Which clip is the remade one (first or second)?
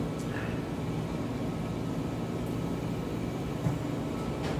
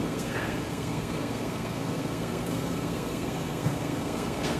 second